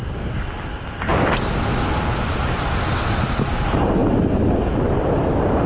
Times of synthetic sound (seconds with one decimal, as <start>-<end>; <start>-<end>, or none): 0.7-1.1; 3.6-4.0; 4.9-5.7